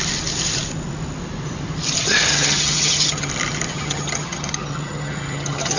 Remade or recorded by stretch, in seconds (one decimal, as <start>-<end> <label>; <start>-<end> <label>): 0.0-2.3 recorded; 2.3-3.3 remade; 3.3-3.7 recorded; 3.7-5.8 remade